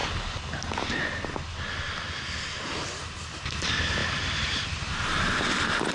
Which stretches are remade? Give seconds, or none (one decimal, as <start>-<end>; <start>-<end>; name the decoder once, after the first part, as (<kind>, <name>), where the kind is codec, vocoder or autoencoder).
4.0-4.9 (vocoder, BigVGAN v2)